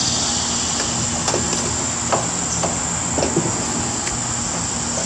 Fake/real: real